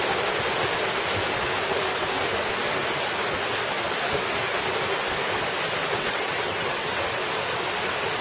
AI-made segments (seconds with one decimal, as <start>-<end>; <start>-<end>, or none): 5.8-7.0